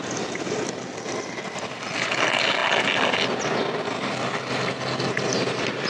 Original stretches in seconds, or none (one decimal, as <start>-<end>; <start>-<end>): 0.0-5.9